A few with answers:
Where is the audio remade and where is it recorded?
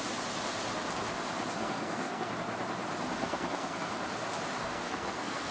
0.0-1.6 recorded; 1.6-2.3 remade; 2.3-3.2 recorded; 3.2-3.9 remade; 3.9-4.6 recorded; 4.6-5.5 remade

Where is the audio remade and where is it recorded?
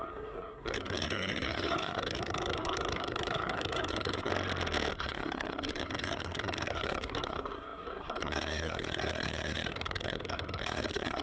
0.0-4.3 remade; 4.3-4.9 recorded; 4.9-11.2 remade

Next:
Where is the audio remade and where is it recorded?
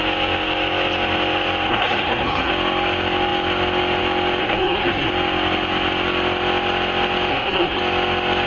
0.0-1.7 recorded; 1.7-2.5 remade; 2.5-4.4 recorded; 4.4-5.1 remade; 5.1-7.3 recorded; 7.3-7.8 remade; 7.8-8.5 recorded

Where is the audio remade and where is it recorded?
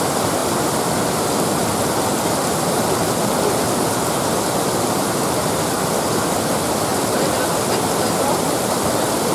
0.0-9.3 recorded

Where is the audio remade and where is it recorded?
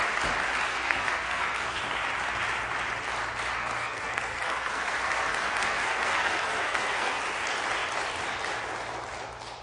0.0-0.7 recorded; 0.7-1.8 remade; 1.8-3.6 recorded; 3.6-7.2 remade; 7.2-9.6 recorded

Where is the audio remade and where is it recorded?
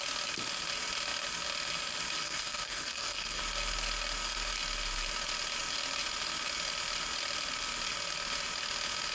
0.0-2.2 recorded; 2.2-3.4 remade; 3.4-9.1 recorded